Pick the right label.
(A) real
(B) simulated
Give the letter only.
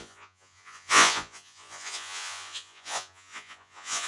B